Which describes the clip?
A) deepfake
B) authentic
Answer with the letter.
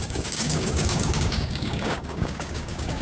A